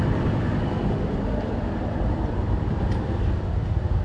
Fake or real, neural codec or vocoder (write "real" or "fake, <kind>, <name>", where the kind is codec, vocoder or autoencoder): fake, vocoder, BigVGAN v2